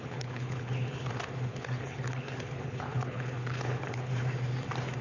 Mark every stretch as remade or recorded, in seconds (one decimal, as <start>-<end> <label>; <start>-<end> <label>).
0.0-1.1 remade; 1.1-1.5 recorded; 1.5-4.1 remade; 4.1-5.0 recorded